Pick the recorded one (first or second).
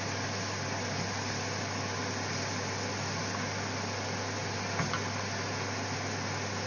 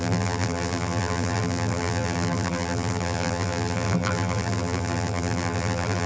first